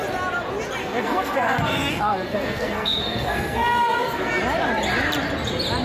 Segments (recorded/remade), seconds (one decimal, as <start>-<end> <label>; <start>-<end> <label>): 0.0-0.8 recorded; 0.8-4.3 remade; 4.3-5.8 recorded